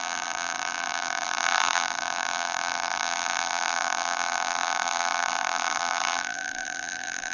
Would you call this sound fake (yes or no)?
yes